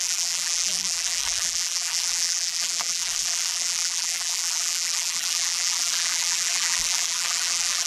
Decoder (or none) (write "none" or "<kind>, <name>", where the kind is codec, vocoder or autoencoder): vocoder, BigVGAN v2